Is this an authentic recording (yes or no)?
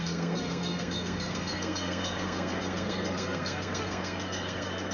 no